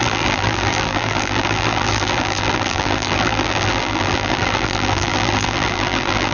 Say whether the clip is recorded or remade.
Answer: remade